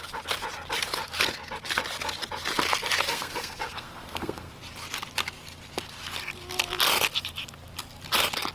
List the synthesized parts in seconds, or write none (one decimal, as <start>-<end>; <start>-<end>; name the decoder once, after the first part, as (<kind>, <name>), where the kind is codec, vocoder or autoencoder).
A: 3.1-4.5 (codec, SNAC)